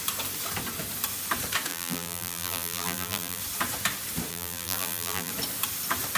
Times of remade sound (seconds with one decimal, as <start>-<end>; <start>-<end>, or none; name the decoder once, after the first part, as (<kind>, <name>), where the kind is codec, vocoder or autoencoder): 1.7-3.4 (vocoder, BigVGAN v2); 4.3-5.3